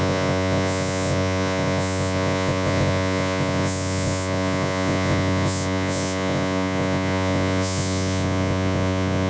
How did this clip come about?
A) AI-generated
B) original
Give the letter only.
A